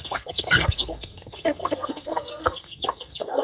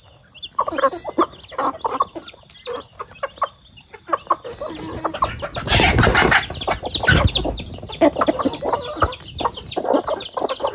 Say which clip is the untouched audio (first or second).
second